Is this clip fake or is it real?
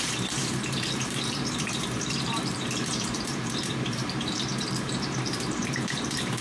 fake